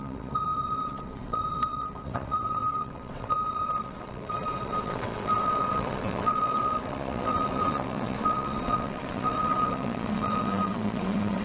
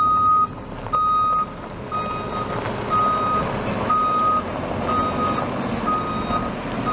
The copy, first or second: first